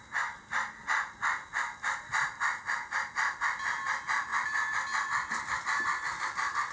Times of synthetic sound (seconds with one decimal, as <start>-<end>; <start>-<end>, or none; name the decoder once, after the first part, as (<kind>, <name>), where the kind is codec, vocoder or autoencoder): none